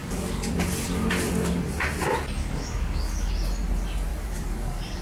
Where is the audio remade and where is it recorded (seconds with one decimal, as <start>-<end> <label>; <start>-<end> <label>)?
0.0-0.5 remade; 0.5-2.4 recorded; 2.4-3.3 remade; 3.3-4.1 recorded; 4.1-5.0 remade